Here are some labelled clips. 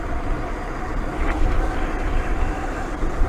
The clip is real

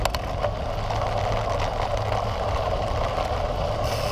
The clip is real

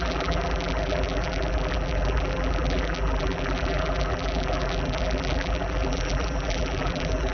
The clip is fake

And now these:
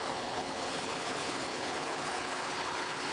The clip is fake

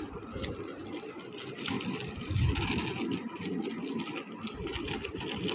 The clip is real